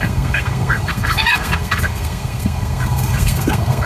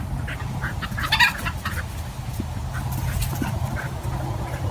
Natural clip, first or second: second